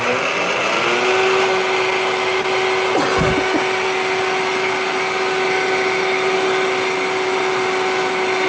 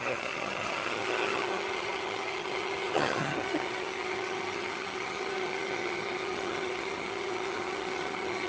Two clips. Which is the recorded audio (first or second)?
first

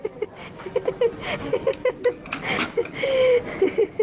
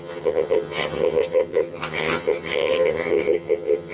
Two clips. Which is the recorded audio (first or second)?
first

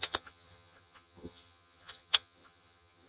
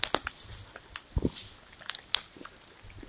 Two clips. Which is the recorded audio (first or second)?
second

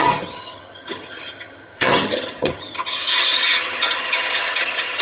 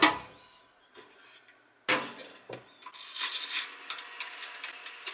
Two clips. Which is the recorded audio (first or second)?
second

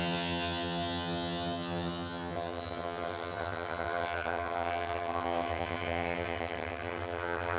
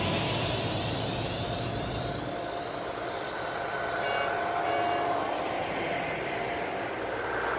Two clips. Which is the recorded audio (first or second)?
second